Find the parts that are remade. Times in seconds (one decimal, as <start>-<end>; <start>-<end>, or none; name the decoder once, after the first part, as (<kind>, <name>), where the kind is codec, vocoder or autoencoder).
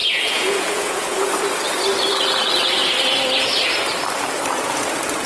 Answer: 0.0-1.3 (vocoder, Vocos)